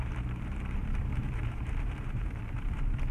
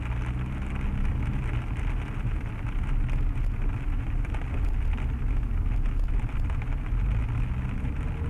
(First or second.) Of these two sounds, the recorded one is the second